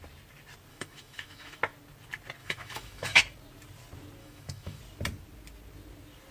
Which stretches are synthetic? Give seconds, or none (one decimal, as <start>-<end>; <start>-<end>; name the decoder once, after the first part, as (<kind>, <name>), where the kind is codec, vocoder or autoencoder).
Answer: 0.7-1.6 (autoencoder, DAC-VAE); 2.4-3.2; 4.2-4.8